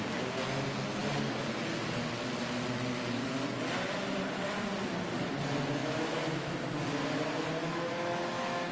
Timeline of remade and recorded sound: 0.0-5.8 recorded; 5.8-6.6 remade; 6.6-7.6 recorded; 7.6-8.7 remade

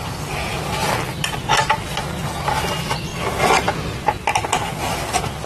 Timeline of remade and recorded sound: 0.0-5.5 recorded